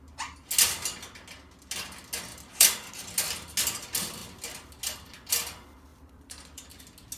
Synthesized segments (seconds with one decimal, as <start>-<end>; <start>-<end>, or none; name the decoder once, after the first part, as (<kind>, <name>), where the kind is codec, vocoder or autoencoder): 2.3-2.9 (vocoder, BigVGAN v2); 5.9-6.8

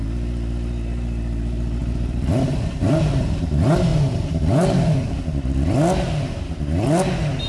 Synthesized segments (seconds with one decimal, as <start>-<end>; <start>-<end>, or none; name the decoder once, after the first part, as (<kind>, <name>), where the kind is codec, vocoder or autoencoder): 1.8-2.9 (vocoder, BigVGAN v2); 3.9-5.0

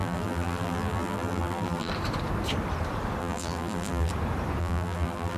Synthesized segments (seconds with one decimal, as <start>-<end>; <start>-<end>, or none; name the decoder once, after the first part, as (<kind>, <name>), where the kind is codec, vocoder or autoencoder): 0.0-1.9 (vocoder, BigVGAN v2); 3.2-4.1; 4.6-5.4